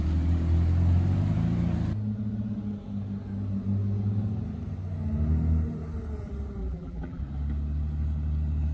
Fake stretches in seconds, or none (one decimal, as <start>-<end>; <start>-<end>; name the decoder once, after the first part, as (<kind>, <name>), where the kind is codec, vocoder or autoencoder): 6.6-7.2 (vocoder, BigVGAN v2)